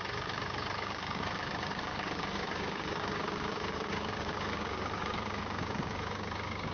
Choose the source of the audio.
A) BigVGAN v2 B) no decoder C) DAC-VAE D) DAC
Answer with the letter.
D